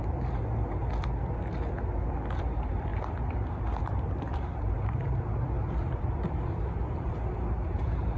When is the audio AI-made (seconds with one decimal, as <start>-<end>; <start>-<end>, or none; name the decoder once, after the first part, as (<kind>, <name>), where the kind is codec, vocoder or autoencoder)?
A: 2.4-2.9 (vocoder, BigVGAN v2); 3.9-8.2